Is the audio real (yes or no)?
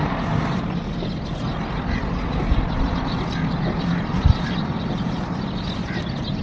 yes